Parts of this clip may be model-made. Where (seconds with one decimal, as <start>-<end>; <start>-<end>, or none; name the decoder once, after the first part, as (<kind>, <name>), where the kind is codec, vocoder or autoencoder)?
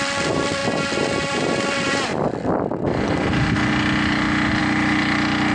0.0-0.6 (vocoder, BigVGAN v2); 1.3-2.1; 4.6-5.5